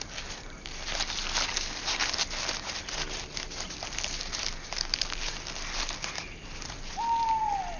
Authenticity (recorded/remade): recorded